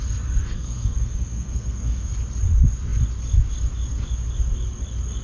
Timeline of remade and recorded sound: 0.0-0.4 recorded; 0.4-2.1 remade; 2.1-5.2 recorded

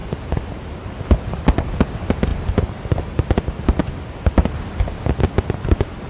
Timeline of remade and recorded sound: 0.0-6.1 recorded

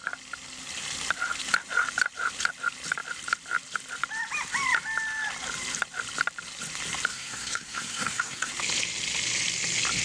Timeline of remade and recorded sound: 0.0-7.1 recorded; 7.1-8.5 remade; 8.5-10.0 recorded

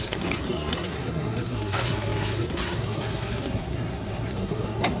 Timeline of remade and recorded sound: 0.0-5.0 remade